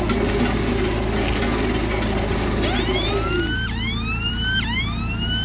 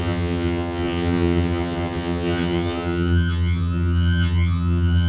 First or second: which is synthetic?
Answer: second